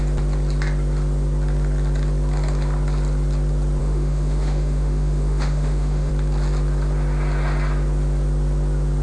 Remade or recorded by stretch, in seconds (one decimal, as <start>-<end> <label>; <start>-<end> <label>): 0.0-3.8 recorded; 3.8-6.1 remade; 6.1-9.0 recorded